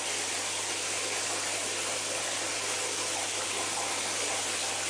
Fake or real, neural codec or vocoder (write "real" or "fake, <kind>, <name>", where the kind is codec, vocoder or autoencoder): real